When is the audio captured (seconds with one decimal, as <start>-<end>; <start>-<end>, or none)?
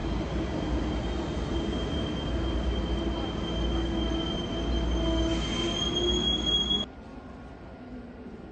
0.0-8.5